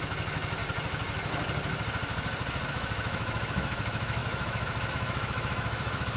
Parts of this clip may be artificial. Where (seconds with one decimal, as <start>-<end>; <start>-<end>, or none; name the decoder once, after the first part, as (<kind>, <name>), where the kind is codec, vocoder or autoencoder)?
0.0-0.6 (autoencoder, DAC-VAE); 2.7-6.2